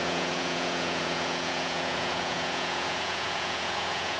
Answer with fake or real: fake